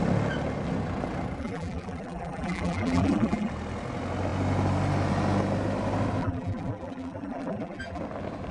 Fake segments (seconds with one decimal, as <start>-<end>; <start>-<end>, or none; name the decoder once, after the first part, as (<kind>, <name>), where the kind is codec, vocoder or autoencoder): 1.4-3.5 (vocoder, BigVGAN v2); 6.2-8.0